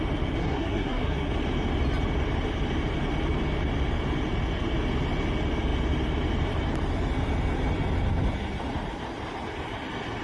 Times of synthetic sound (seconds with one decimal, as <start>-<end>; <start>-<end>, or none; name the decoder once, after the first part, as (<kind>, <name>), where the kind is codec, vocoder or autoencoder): 0.4-1.3 (codec, SNAC)